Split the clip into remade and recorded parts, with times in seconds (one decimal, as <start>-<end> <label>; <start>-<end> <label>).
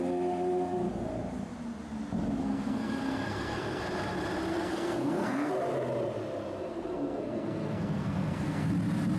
0.0-2.4 recorded; 2.4-3.8 remade; 3.8-4.5 recorded; 4.5-5.5 remade; 5.5-6.7 recorded; 6.7-8.7 remade; 8.7-9.2 recorded